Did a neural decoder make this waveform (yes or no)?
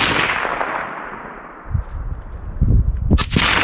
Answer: no